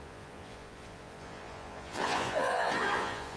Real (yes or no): no